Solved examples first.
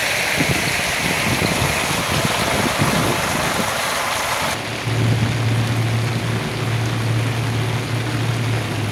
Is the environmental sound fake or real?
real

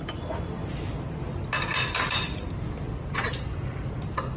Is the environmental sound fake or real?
real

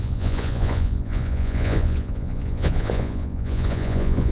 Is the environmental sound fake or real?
fake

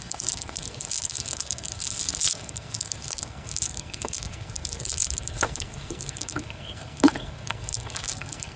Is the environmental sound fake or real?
fake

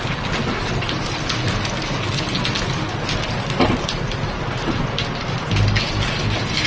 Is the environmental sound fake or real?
real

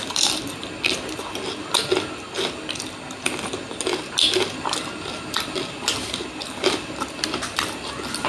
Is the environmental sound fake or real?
real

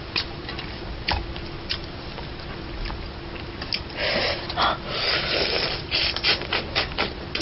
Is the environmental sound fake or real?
real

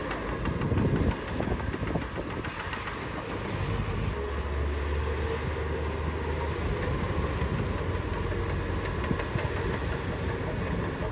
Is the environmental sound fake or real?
real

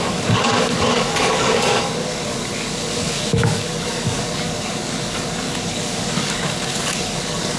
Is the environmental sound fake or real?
fake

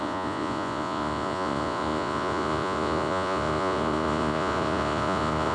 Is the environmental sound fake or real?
fake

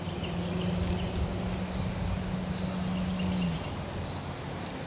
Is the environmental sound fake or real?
real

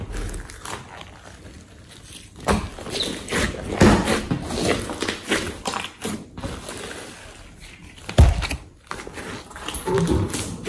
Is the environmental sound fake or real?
real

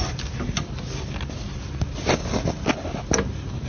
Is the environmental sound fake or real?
real